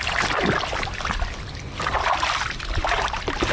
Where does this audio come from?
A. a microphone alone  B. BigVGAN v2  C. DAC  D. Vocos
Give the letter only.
B